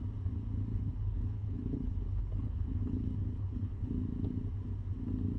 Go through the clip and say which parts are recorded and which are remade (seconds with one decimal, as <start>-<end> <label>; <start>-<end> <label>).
0.0-0.7 recorded; 0.7-3.9 remade; 3.9-5.4 recorded